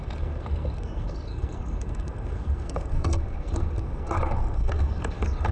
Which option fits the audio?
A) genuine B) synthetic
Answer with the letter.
B